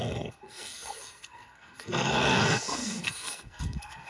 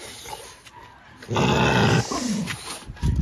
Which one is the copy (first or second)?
first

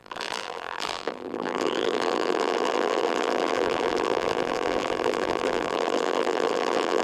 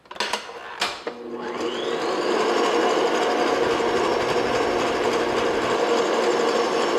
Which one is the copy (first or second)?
first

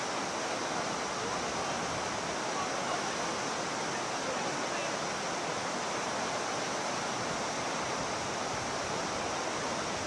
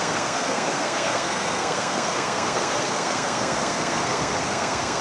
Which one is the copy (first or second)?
second